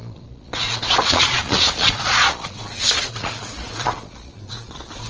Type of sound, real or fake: fake